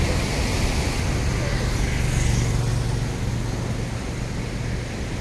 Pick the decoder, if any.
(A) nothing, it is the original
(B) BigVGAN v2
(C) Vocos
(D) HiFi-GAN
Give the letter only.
A